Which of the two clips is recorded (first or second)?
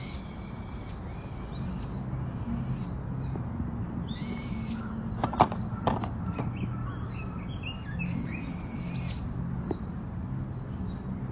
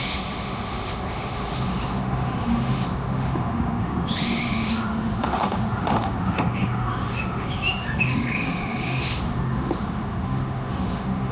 first